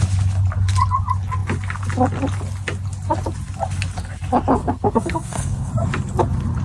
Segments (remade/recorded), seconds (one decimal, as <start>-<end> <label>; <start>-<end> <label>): 0.0-4.6 recorded; 4.6-5.7 remade; 5.7-6.6 recorded

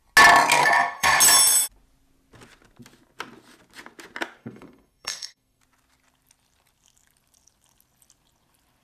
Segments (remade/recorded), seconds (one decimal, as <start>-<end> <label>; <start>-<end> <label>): 0.0-0.6 recorded; 0.6-1.2 remade; 1.2-4.4 recorded; 4.4-5.6 remade; 5.6-8.8 recorded

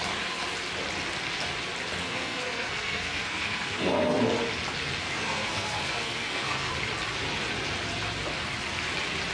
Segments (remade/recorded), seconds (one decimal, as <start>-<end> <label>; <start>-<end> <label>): 0.0-2.0 recorded; 2.0-4.2 remade; 4.2-5.0 recorded; 5.0-6.7 remade; 6.7-9.3 recorded

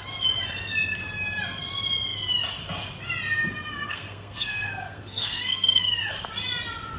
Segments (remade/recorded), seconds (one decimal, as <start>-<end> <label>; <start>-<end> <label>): 0.0-3.7 recorded; 3.7-6.0 remade; 6.0-7.0 recorded